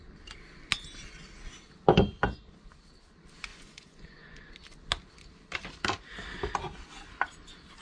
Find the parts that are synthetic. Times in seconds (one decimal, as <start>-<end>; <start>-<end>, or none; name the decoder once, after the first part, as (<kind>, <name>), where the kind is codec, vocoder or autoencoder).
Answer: 3.5-4.5 (vocoder, Vocos)